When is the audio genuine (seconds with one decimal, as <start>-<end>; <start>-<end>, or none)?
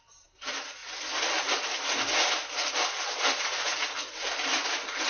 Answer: 0.0-5.1